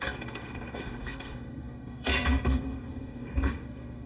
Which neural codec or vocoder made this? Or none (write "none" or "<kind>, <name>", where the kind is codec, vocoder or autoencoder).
codec, SNAC